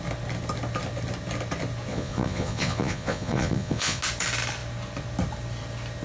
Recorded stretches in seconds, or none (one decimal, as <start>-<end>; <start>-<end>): 0.0-1.9; 4.0-6.0